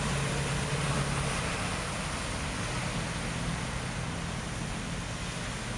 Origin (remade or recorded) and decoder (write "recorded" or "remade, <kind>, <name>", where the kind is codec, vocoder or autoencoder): recorded